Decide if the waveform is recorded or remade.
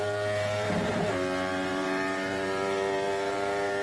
remade